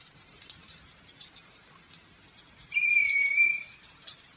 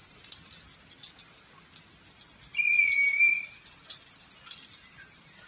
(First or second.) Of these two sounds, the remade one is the first